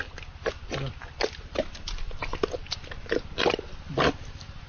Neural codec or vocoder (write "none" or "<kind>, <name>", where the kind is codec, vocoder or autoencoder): none